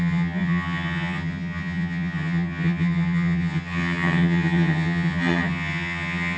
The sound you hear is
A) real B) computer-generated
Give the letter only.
B